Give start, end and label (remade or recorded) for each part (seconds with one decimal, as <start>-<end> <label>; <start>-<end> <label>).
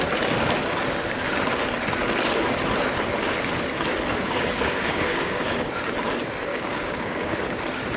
0.0-4.1 recorded; 4.1-5.7 remade; 5.7-6.5 recorded; 6.5-7.6 remade; 7.6-8.0 recorded